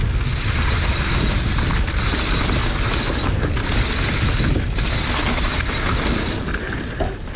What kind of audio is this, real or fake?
real